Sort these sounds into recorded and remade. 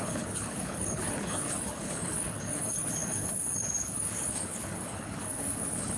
remade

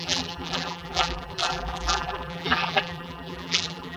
remade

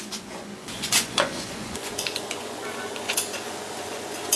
remade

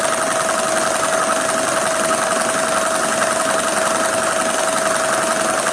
recorded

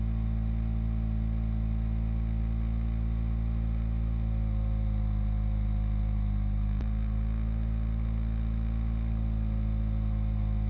recorded